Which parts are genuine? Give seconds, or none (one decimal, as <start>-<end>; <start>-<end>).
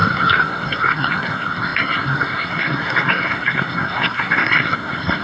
none